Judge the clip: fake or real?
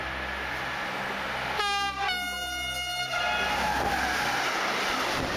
real